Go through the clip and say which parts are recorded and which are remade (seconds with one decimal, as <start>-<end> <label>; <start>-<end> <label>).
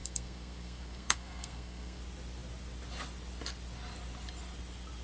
0.0-2.0 remade; 2.0-5.0 recorded